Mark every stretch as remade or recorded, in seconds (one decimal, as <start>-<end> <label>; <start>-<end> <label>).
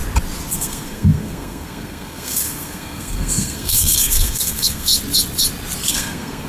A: 0.0-0.5 recorded; 0.5-4.9 remade; 4.9-5.9 recorded; 5.9-6.5 remade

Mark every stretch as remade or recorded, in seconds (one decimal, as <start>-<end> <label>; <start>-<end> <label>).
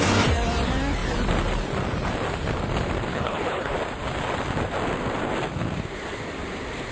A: 0.0-3.1 recorded; 3.1-3.7 remade; 3.7-6.9 recorded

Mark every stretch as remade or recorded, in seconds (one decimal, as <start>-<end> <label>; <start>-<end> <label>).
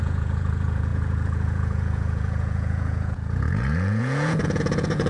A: 0.0-5.1 remade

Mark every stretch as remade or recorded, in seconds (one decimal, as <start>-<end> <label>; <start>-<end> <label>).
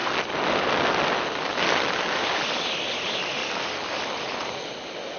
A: 0.0-5.2 recorded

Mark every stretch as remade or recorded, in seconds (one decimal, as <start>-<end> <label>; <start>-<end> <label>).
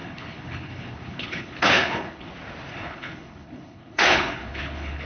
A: 0.0-2.3 remade; 2.3-2.7 recorded; 2.7-5.1 remade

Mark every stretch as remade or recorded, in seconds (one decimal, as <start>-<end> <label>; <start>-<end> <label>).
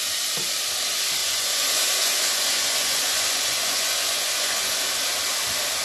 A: 0.0-1.2 recorded; 1.2-4.7 remade; 4.7-5.8 recorded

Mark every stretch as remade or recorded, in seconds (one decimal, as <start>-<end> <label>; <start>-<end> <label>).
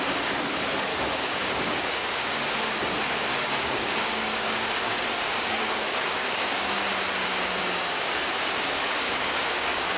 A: 0.0-0.9 recorded; 0.9-2.4 remade; 2.4-3.3 recorded; 3.3-6.8 remade; 6.8-7.2 recorded; 7.2-10.0 remade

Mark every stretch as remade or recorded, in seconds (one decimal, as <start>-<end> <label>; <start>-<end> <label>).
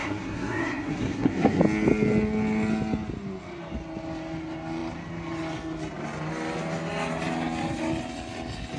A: 0.0-1.6 remade; 1.6-8.8 recorded